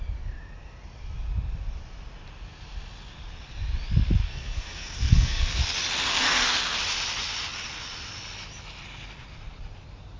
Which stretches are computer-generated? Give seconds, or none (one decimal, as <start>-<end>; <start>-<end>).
4.3-5.6; 6.1-6.8